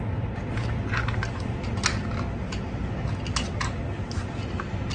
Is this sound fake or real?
real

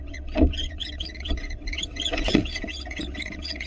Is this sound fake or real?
fake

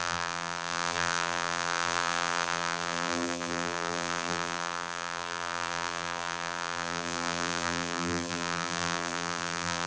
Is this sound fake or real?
fake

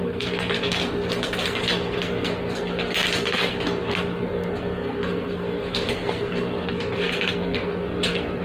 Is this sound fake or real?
fake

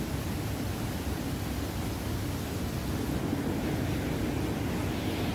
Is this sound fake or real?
real